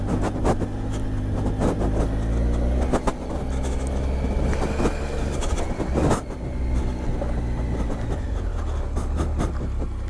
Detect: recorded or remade recorded